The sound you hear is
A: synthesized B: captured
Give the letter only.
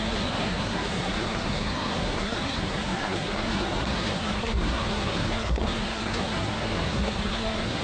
A